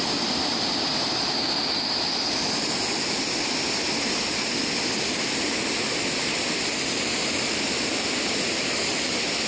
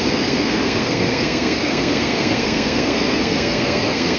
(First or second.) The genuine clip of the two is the first